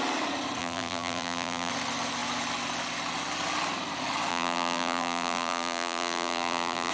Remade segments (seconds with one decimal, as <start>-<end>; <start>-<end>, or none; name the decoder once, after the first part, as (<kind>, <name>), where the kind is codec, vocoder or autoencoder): 0.6-1.7 (vocoder, BigVGAN v2); 4.3-6.9